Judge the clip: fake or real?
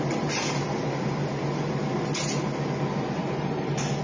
real